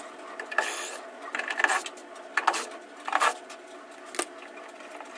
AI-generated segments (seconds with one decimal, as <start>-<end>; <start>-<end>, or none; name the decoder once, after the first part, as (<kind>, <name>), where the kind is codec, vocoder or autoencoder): none